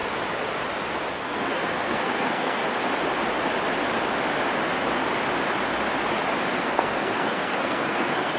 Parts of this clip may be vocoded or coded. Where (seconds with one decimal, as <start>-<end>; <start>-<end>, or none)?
1.1-2.6; 6.6-8.4